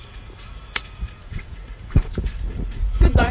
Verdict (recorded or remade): remade